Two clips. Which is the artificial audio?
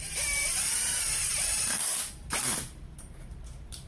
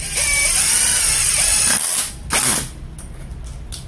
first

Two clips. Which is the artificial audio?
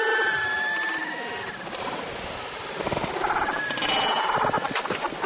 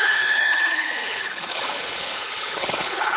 second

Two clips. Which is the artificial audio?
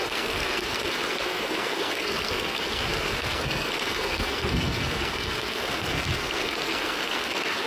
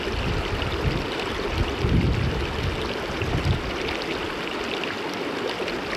first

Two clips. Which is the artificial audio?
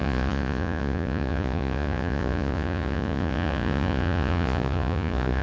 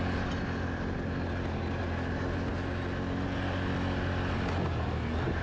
first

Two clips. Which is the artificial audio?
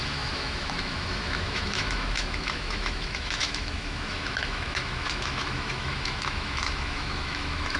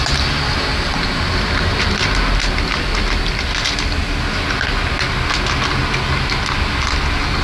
first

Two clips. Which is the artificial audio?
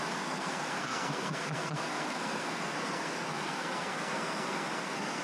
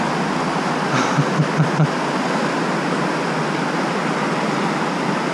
first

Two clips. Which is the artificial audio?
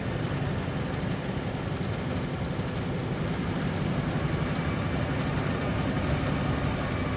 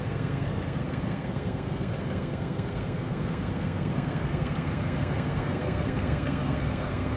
second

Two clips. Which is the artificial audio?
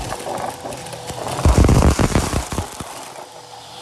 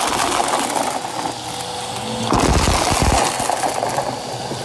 first